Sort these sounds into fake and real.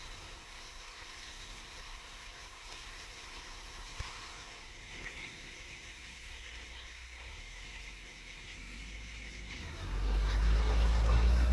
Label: fake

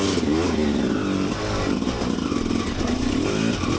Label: real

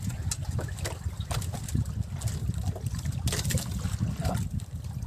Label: real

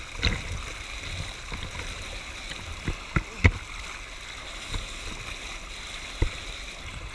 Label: real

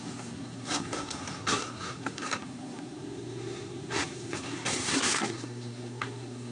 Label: fake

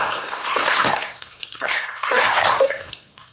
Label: fake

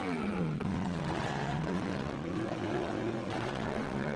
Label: fake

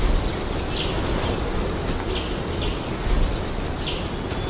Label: real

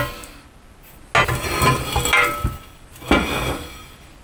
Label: real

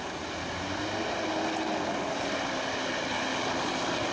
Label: real